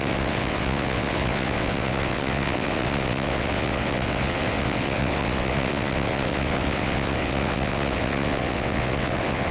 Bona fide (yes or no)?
no